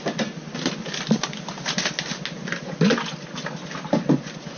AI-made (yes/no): no